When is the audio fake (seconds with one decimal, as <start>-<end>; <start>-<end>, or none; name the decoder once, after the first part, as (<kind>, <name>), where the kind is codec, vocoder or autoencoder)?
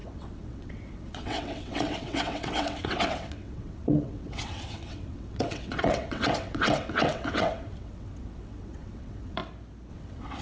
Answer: 0.0-9.4 (vocoder, WaveNeXt); 9.9-10.4